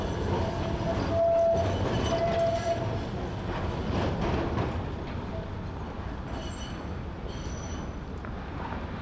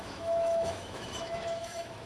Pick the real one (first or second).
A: first